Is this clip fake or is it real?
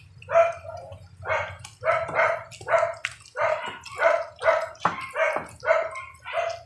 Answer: real